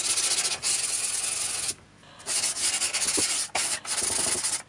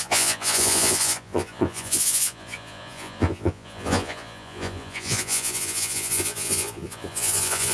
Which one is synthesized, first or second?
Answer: second